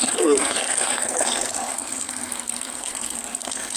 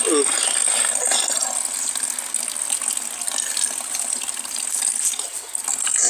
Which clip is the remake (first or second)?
first